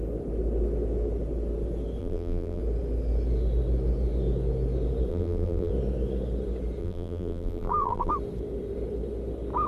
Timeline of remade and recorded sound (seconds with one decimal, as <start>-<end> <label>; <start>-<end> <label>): 0.0-2.0 recorded; 2.0-2.6 remade; 2.6-5.1 recorded; 5.1-5.7 remade; 5.7-6.8 recorded; 6.8-8.1 remade; 8.1-9.7 recorded